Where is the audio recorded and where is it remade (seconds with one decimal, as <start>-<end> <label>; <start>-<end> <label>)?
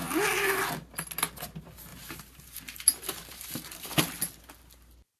0.0-1.9 recorded; 1.9-4.0 remade; 4.0-5.2 recorded